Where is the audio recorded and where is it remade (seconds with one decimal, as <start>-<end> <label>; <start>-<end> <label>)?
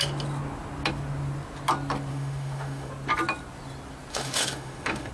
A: 0.0-2.1 recorded; 2.1-2.9 remade; 2.9-4.1 recorded; 4.1-5.1 remade